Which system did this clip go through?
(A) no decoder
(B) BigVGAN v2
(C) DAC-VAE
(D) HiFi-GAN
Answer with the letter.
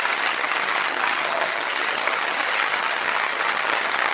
D